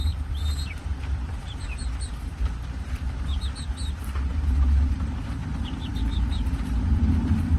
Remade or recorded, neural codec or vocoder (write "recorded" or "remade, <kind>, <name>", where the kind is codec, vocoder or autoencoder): remade, vocoder, BigVGAN v2